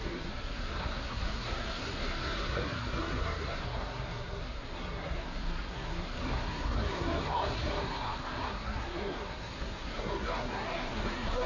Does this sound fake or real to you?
fake